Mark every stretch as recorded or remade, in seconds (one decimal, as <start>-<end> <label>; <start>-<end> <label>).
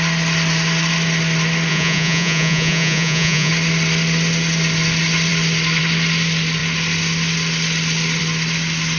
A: 0.0-1.7 recorded; 1.7-3.5 remade; 3.5-9.0 recorded